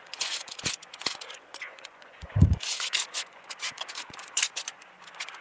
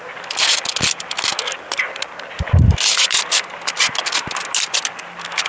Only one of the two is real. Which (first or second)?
second